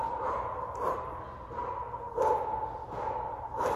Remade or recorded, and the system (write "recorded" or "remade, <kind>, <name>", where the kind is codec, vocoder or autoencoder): recorded